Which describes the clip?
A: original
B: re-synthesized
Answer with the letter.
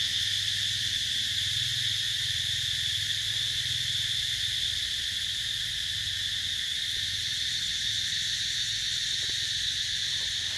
A